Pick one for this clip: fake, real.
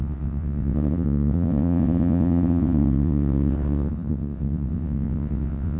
fake